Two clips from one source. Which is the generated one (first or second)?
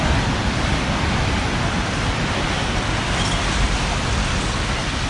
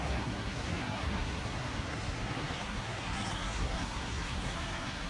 second